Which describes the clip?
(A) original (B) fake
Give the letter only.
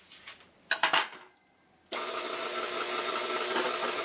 A